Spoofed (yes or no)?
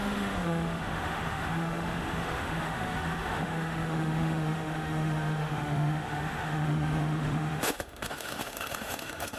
yes